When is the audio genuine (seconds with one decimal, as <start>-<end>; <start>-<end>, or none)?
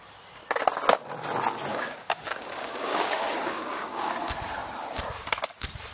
0.0-1.7; 4.1-5.9